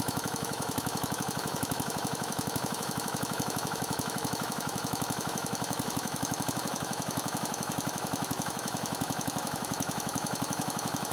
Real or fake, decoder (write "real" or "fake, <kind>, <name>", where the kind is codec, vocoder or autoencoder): fake, autoencoder, DAC-VAE